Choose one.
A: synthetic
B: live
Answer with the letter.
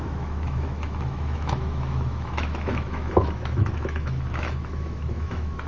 A